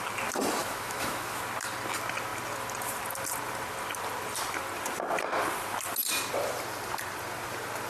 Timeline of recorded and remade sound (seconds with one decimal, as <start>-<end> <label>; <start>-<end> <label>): 0.0-0.6 recorded; 0.6-1.4 remade; 1.4-7.9 recorded